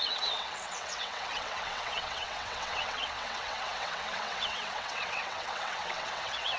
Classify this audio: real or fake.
fake